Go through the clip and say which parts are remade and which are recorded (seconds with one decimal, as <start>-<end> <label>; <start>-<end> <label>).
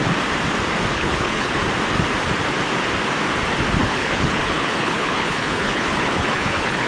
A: 0.0-0.9 recorded; 0.9-1.6 remade; 1.6-3.8 recorded; 3.8-6.9 remade